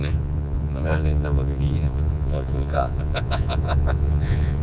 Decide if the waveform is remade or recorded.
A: remade